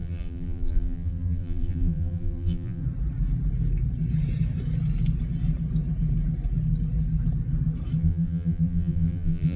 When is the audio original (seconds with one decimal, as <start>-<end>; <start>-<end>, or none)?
2.8-8.0